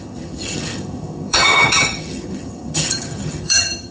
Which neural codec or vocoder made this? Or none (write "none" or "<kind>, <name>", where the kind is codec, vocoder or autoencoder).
vocoder, HiFi-GAN